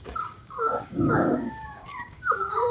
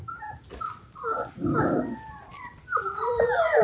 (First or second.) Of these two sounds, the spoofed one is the first